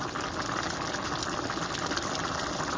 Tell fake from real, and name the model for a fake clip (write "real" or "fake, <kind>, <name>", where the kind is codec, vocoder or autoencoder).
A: real